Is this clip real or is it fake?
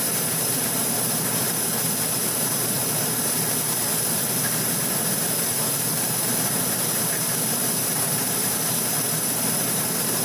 fake